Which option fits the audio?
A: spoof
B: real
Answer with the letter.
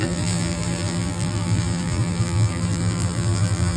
A